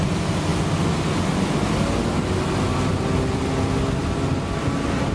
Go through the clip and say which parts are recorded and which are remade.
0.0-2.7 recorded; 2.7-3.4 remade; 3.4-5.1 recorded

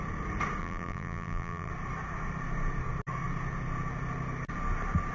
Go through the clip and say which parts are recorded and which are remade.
0.0-0.6 recorded; 0.6-1.7 remade; 1.7-5.1 recorded

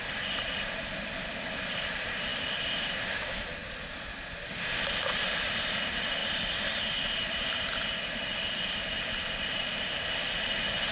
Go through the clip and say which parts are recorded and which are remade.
0.0-10.9 recorded

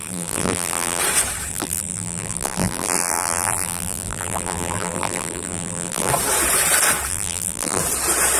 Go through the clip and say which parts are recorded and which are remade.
0.0-1.0 remade; 1.0-1.5 recorded; 1.5-6.1 remade; 6.1-7.1 recorded; 7.1-7.8 remade; 7.8-8.4 recorded

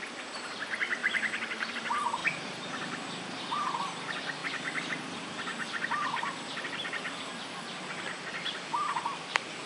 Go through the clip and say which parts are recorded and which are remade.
0.0-1.0 recorded; 1.0-1.7 remade; 1.7-2.2 recorded; 2.2-3.8 remade; 3.8-9.7 recorded

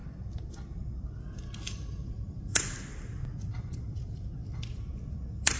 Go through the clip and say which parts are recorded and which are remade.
0.0-1.2 remade; 1.2-2.0 recorded; 2.0-5.6 remade